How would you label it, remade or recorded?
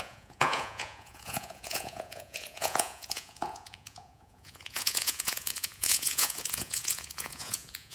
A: remade